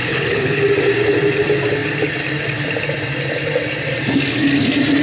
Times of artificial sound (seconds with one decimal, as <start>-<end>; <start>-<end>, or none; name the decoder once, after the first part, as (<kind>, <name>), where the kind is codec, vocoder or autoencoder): 0.0-0.6 (codec, HILCodec)